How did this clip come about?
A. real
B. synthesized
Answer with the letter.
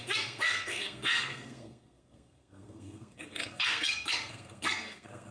B